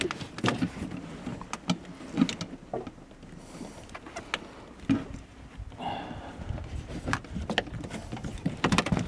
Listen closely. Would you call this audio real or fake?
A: real